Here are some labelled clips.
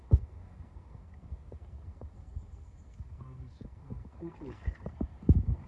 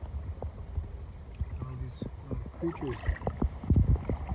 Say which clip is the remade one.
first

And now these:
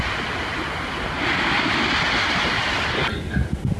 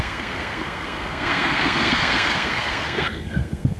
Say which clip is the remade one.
second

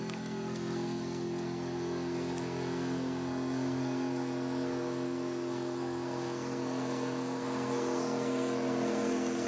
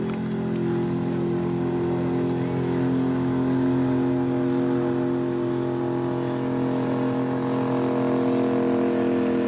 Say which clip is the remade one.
first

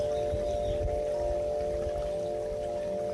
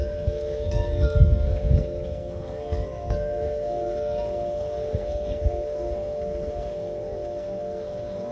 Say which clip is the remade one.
second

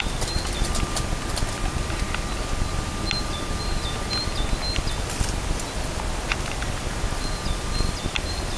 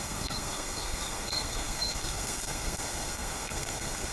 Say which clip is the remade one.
second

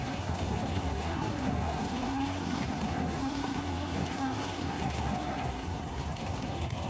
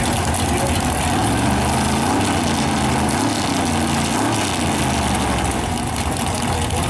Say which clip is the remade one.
first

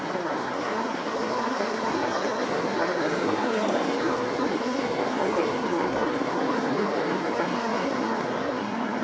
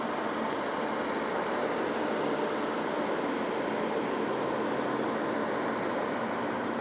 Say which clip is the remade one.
first